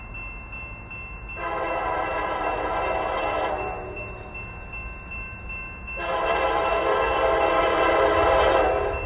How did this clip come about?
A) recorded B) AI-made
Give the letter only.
A